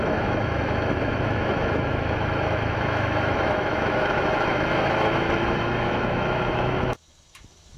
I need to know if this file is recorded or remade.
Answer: remade